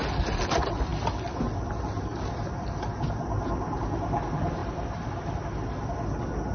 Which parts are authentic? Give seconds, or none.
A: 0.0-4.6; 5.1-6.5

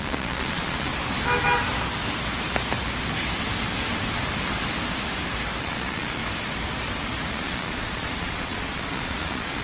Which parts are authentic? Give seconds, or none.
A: 0.9-5.6; 6.2-7.3

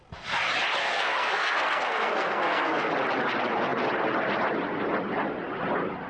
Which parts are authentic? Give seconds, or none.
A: 0.0-0.8; 2.9-6.1